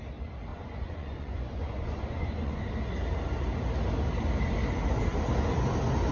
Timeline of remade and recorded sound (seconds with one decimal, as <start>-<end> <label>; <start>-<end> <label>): 0.0-0.5 recorded; 0.5-2.7 remade; 2.7-6.1 recorded